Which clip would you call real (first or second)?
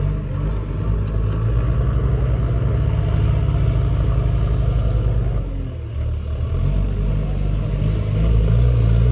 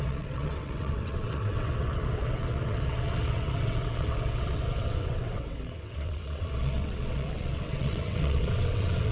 first